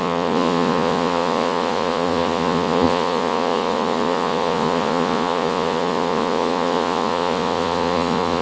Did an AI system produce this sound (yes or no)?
yes